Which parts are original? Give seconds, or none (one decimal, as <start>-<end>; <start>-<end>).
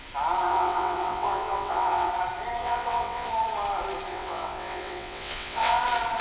0.0-0.5; 2.1-2.6; 3.3-4.1; 5.8-6.2